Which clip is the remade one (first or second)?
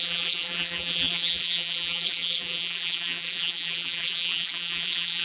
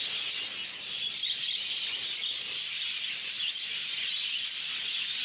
first